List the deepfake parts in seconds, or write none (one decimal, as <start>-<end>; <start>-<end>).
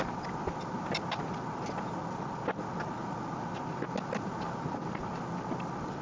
none